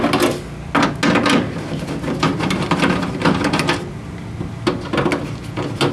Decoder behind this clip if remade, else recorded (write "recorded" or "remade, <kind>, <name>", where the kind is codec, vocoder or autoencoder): recorded